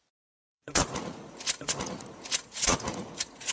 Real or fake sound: fake